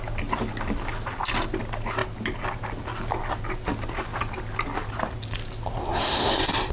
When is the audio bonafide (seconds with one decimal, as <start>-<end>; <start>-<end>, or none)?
0.0-5.8; 6.3-6.7